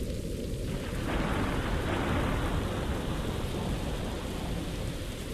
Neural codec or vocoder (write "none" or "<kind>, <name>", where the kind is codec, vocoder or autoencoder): none